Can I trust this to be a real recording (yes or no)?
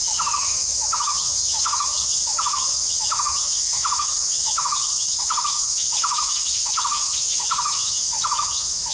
no